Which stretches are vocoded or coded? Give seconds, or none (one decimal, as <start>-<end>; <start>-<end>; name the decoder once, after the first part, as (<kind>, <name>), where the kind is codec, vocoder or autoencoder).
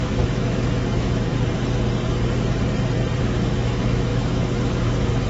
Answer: 0.0-1.3 (autoencoder, DAC-VAE); 3.2-5.3